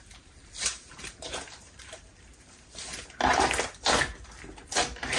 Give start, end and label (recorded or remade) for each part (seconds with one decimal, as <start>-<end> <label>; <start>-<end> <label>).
0.0-0.7 recorded; 0.7-3.4 remade; 3.4-5.2 recorded